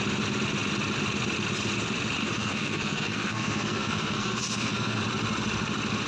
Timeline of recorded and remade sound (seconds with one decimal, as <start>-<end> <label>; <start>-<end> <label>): 0.0-2.2 recorded; 2.2-5.0 remade; 5.0-6.1 recorded